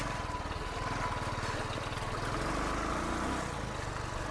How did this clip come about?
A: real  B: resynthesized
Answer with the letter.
A